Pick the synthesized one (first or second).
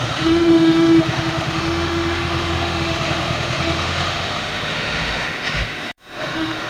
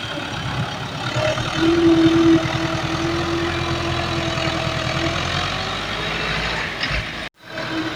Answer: first